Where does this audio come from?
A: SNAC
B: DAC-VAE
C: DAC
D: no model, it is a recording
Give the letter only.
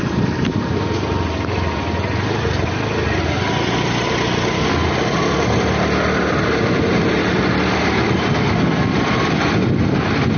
D